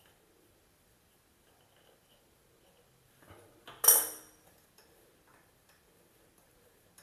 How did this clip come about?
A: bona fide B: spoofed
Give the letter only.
A